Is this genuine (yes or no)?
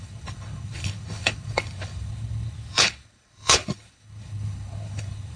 no